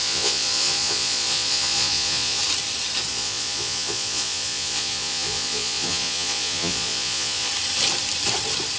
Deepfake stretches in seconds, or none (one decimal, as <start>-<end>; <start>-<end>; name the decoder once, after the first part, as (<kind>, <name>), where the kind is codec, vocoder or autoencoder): 0.0-2.4 (vocoder, Vocos); 3.1-7.5